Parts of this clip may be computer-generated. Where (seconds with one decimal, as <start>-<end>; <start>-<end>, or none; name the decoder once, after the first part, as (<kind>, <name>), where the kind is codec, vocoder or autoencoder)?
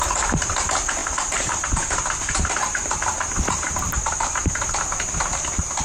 1.0-4.5 (vocoder, BigVGAN v2)